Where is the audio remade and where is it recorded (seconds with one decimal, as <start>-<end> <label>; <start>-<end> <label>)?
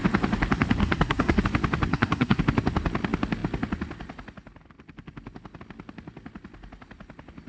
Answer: 0.0-0.8 recorded; 0.8-1.4 remade; 1.4-1.9 recorded; 1.9-2.4 remade; 2.4-7.5 recorded